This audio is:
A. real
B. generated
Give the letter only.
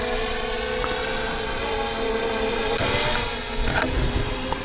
A